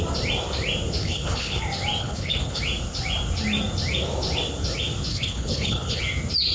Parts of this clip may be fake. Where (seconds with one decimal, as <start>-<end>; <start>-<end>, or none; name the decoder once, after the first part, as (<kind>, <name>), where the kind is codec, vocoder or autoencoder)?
1.0-1.6 (codec, HILCodec); 2.0-2.6; 5.1-6.0